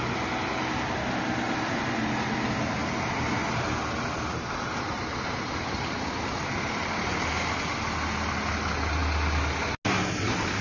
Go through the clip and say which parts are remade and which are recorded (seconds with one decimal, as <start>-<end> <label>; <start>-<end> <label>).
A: 0.0-10.6 recorded